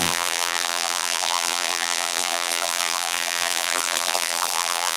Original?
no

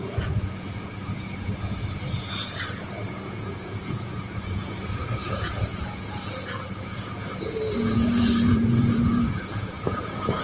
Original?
no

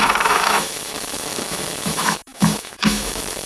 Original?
no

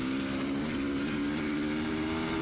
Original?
yes